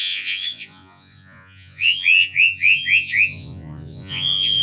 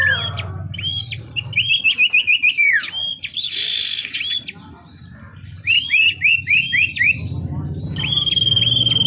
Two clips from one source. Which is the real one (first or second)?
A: second